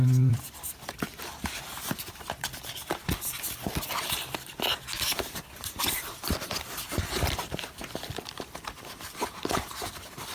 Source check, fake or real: fake